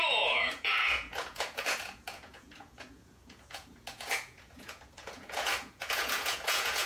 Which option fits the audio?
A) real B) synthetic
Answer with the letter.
B